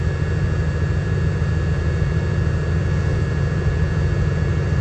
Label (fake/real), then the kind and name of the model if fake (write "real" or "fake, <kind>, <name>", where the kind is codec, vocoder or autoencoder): real